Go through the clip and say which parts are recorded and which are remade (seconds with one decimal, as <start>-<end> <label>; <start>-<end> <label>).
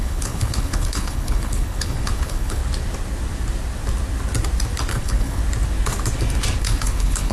0.0-2.6 remade; 2.6-4.9 recorded; 4.9-5.4 remade; 5.4-6.6 recorded; 6.6-7.3 remade